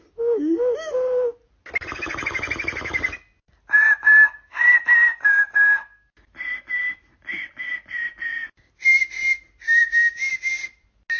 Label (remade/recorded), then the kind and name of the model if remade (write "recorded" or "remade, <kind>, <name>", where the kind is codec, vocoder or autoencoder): recorded